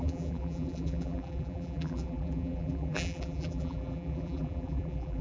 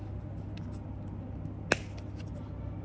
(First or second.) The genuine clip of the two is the second